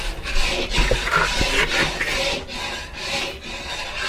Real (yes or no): yes